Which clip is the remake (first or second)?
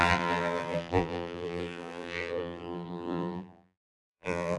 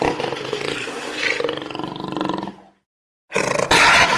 first